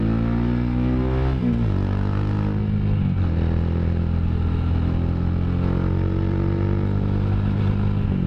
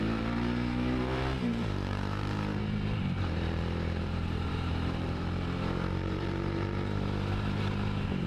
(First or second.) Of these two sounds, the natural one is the first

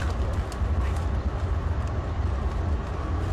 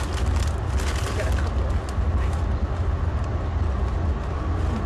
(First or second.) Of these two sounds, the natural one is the second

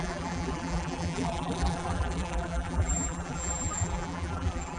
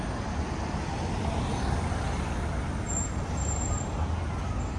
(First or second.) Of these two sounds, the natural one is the second